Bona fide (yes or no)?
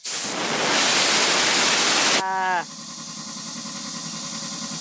yes